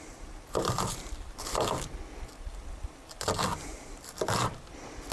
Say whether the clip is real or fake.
real